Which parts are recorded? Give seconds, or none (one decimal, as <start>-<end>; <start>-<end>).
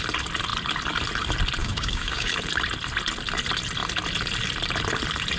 0.0-1.6; 2.3-5.4